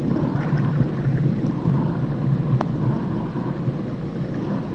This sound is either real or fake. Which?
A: real